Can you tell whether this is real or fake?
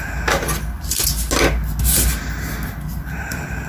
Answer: real